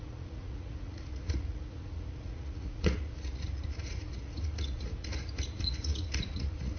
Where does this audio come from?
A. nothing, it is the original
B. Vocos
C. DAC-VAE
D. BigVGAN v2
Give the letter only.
B